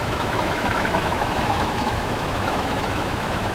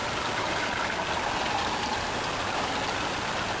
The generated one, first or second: first